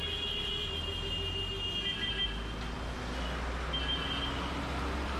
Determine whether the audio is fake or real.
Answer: real